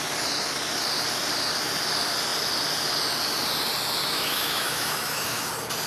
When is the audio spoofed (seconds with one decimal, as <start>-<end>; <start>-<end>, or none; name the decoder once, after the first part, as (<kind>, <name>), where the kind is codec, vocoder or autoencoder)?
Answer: 4.0-5.5 (autoencoder, DAC-VAE)